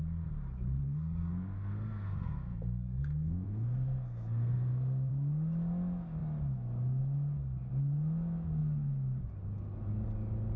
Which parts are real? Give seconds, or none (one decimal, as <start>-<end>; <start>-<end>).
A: 0.0-0.8; 5.1-10.6